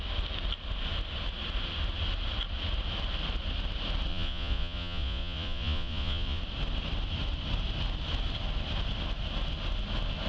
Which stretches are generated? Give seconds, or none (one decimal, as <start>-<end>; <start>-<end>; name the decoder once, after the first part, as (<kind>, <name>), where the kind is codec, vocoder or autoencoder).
4.1-6.4 (vocoder, Vocos)